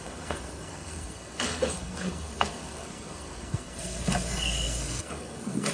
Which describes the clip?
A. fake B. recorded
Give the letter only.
A